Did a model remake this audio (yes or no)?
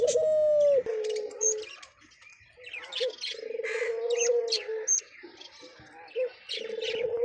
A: no